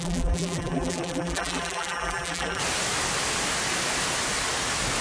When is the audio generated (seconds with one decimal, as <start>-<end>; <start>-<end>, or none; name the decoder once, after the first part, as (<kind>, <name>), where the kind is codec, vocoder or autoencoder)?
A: 0.0-2.6 (vocoder, BigVGAN v2)